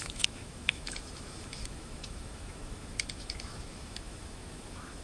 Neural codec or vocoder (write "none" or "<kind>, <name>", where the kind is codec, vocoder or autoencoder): autoencoder, DAC-VAE